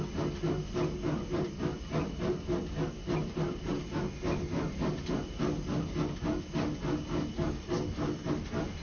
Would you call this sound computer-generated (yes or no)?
no